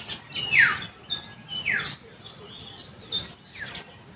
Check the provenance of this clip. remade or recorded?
recorded